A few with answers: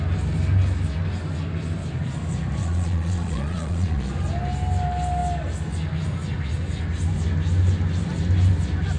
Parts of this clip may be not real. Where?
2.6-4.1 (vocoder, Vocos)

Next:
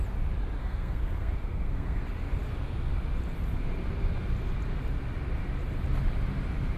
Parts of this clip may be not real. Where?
0.6-2.0 (codec, SNAC)

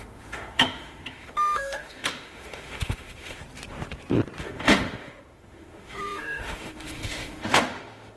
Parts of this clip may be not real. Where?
0.0-3.4 (autoencoder, DAC-VAE); 4.4-8.2